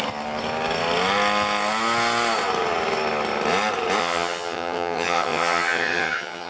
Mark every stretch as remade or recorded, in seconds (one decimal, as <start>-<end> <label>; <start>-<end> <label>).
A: 0.0-4.0 recorded; 4.0-6.5 remade